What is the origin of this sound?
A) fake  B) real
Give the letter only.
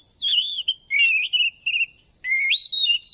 B